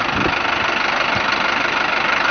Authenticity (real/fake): real